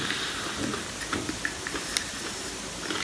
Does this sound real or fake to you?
real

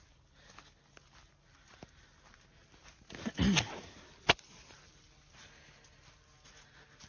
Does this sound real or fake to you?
real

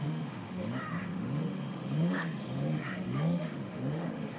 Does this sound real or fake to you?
fake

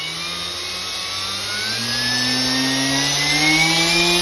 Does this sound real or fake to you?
real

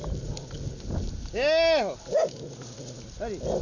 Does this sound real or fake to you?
real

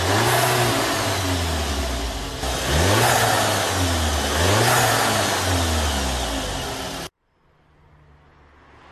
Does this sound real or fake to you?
real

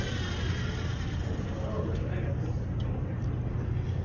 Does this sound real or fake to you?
real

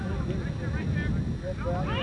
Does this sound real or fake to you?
real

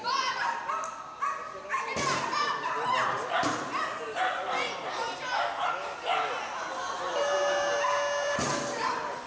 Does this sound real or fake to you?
real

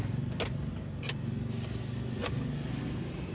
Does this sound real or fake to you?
real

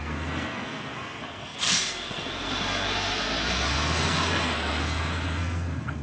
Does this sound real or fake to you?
fake